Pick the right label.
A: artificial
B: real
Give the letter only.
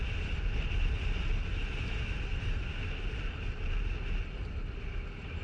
B